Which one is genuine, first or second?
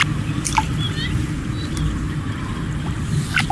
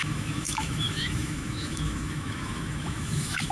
first